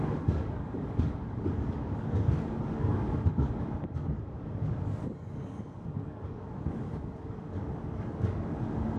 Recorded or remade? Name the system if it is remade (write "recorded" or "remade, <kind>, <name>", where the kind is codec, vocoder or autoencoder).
remade, codec, DAC